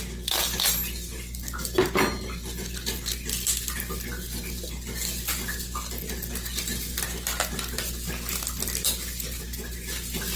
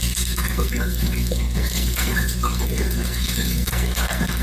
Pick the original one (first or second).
first